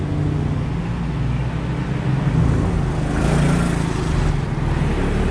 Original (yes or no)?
yes